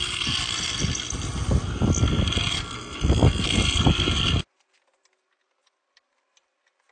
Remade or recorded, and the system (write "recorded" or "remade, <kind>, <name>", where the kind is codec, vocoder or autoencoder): recorded